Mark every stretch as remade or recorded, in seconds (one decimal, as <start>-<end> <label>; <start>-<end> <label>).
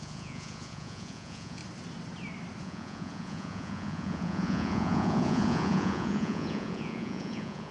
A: 0.0-1.6 remade; 1.6-2.6 recorded; 2.6-7.7 remade